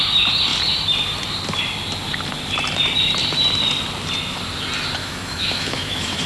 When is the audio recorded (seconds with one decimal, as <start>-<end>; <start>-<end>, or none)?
0.0-5.0